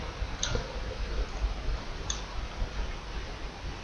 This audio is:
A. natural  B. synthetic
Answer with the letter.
A